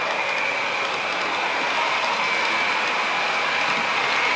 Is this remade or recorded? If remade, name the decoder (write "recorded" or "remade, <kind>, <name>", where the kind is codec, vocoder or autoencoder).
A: recorded